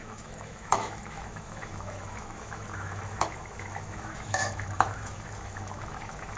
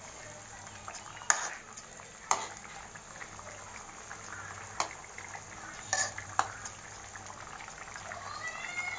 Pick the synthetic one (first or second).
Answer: first